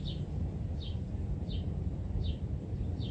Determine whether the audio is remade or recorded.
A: recorded